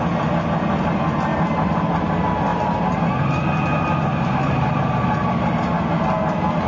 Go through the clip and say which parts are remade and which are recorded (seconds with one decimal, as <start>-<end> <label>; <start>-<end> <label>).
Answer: 0.0-1.3 recorded; 1.3-2.1 remade; 2.1-2.5 recorded; 2.5-3.1 remade; 3.1-4.1 recorded; 4.1-5.7 remade; 5.7-6.7 recorded

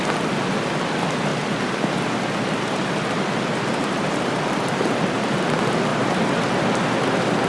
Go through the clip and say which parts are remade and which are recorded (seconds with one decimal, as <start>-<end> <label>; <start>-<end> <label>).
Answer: 0.0-3.8 recorded; 3.8-5.4 remade; 5.4-7.5 recorded

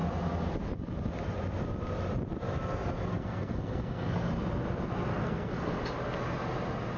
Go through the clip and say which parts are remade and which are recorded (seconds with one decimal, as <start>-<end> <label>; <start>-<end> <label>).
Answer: 0.0-3.1 recorded; 3.1-4.3 remade; 4.3-5.1 recorded; 5.1-5.8 remade; 5.8-7.0 recorded

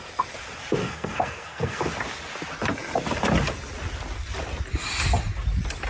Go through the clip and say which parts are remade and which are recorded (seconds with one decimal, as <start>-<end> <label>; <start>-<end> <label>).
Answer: 0.0-0.8 recorded; 0.8-1.9 remade; 1.9-5.9 recorded